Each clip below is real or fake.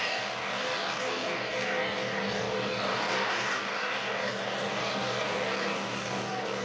fake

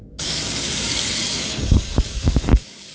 fake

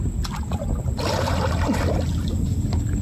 real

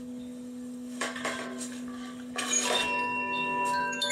fake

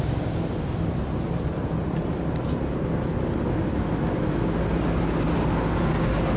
real